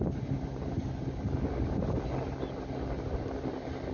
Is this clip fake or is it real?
real